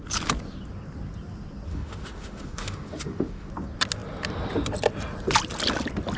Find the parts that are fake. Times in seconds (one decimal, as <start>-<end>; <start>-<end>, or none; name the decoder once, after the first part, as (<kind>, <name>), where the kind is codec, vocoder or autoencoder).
1.7-3.5 (autoencoder, DAC-VAE)